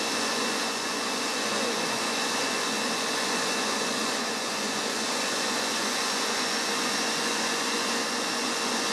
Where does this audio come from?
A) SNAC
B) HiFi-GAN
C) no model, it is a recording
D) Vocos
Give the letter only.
D